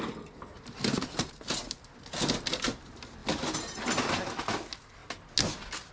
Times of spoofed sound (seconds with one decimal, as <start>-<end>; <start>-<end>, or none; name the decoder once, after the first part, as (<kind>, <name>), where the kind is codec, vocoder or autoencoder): none